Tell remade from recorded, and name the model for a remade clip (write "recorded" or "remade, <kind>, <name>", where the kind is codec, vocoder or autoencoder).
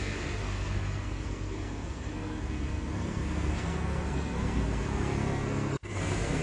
remade, codec, SNAC